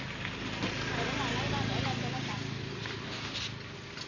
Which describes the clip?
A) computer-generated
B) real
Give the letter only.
B